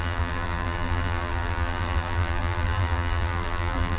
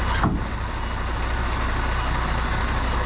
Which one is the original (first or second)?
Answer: second